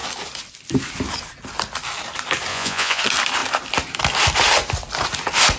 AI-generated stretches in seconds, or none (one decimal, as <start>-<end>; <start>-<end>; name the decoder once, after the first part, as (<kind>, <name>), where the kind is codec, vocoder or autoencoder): 2.5-3.0 (vocoder, Vocos)